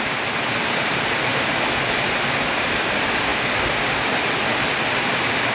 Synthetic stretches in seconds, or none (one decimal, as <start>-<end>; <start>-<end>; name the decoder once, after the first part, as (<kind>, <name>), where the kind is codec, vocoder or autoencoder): none